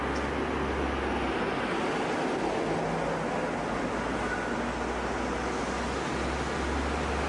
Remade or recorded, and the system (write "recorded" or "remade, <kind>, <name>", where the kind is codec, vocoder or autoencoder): recorded